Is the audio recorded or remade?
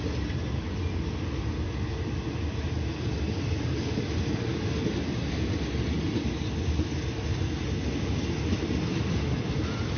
recorded